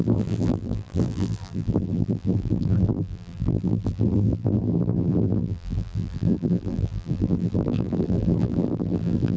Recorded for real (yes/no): no